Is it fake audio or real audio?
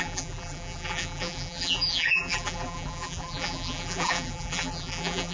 fake